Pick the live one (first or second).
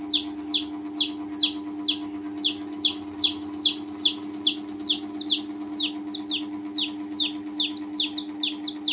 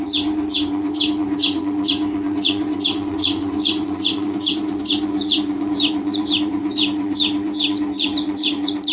first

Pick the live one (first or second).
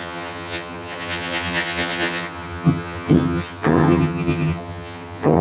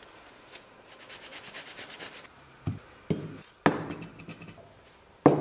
second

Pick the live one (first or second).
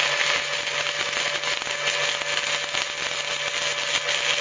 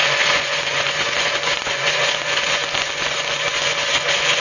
first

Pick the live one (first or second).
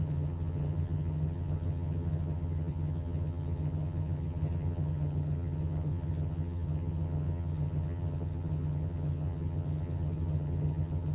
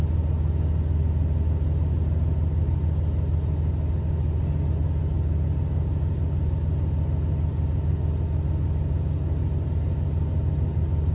second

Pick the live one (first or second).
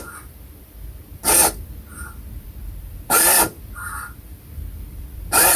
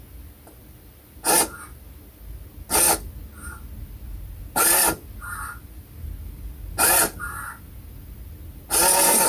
second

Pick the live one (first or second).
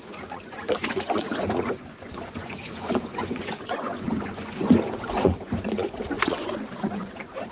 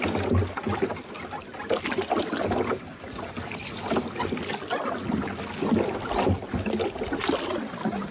second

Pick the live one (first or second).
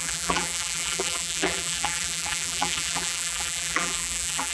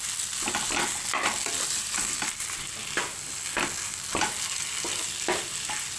second